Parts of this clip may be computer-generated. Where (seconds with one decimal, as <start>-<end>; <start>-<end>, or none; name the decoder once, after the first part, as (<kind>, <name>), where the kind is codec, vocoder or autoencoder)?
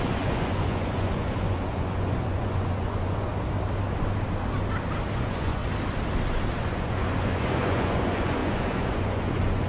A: 0.0-3.3 (vocoder, Vocos); 5.1-5.6; 6.6-9.7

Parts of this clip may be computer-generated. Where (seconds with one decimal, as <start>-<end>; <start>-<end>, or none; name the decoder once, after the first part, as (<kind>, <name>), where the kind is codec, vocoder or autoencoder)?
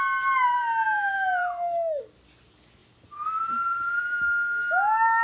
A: 1.4-2.0 (autoencoder, DAC-VAE)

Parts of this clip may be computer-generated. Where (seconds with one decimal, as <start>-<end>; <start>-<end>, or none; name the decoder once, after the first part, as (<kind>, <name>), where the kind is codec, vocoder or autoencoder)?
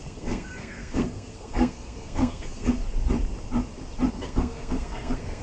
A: 0.0-2.8 (codec, SNAC); 4.1-5.4